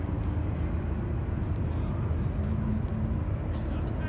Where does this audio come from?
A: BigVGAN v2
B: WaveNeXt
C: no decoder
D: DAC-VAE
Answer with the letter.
C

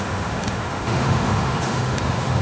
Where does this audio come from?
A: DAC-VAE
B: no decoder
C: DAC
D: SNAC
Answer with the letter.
A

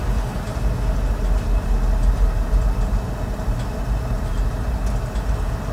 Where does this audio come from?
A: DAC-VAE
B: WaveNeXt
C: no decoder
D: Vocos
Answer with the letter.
C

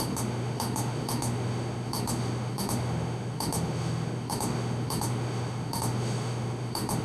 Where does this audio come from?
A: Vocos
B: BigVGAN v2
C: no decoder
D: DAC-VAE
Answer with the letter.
D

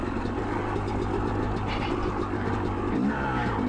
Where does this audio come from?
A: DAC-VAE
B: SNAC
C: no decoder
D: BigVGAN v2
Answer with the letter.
C